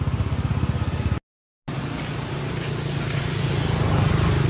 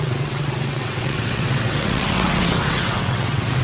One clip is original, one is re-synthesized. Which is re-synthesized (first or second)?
second